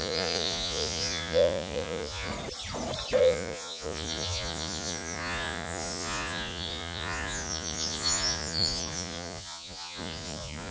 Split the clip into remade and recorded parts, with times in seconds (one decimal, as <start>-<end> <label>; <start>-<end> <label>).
0.0-2.3 remade; 2.3-3.2 recorded; 3.2-10.7 remade